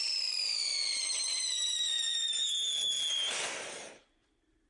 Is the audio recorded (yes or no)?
yes